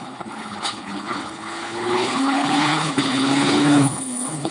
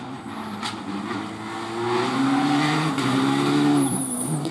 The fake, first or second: first